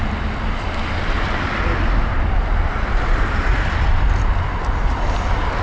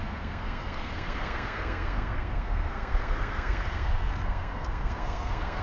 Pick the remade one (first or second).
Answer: second